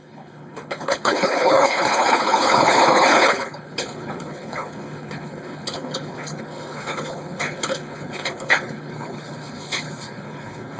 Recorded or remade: remade